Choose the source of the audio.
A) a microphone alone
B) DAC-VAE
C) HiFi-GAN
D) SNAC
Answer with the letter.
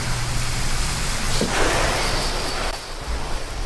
A